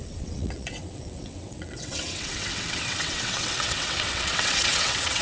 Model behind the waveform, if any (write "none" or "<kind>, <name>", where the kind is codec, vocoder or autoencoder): vocoder, WaveNeXt